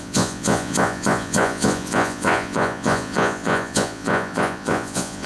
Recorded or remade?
remade